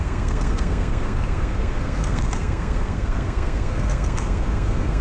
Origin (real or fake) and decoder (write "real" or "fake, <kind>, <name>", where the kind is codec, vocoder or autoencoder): fake, codec, SNAC